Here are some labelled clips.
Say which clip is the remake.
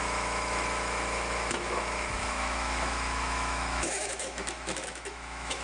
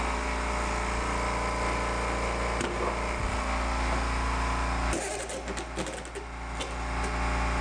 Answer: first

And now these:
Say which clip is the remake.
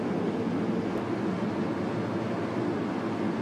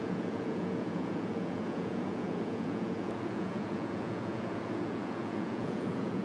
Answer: second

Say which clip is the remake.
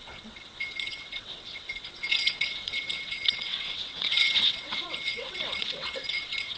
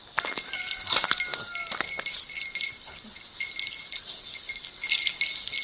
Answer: first